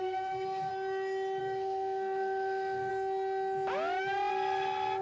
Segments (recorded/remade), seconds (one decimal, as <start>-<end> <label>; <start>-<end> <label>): 0.0-0.7 remade; 0.7-1.4 recorded; 1.4-2.9 remade; 2.9-4.3 recorded; 4.3-5.0 remade

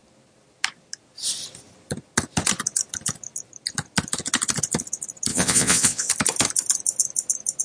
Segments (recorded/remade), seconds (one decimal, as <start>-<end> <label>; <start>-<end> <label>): 0.0-5.3 recorded; 5.3-6.1 remade; 6.1-7.6 recorded

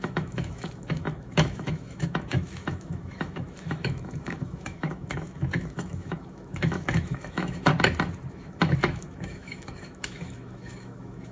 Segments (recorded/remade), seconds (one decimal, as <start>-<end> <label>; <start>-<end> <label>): 0.0-7.7 remade; 7.7-8.3 recorded; 8.3-11.3 remade

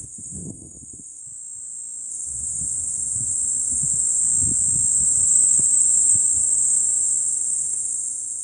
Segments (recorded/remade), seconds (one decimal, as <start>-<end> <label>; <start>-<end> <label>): 0.0-1.2 remade; 1.2-2.1 recorded; 2.1-4.2 remade; 4.2-4.9 recorded; 4.9-8.4 remade

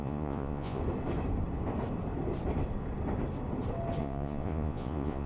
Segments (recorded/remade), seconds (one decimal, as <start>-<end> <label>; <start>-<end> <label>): 0.0-0.8 remade; 0.8-4.0 recorded; 4.0-5.3 remade

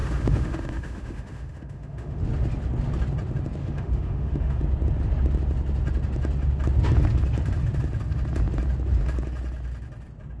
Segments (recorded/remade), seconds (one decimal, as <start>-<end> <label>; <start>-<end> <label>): 0.0-2.2 remade; 2.2-3.6 recorded; 3.6-4.6 remade; 4.6-10.4 recorded